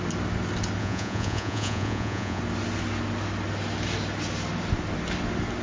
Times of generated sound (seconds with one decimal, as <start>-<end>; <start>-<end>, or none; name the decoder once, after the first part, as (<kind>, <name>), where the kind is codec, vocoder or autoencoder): 0.8-2.4 (vocoder, Vocos)